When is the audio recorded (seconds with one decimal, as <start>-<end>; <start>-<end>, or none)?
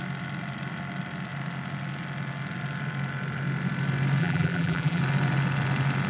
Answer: 0.0-4.2; 5.0-6.1